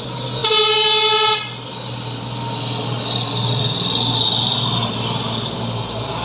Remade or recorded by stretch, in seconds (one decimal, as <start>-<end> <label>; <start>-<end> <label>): 0.0-6.2 recorded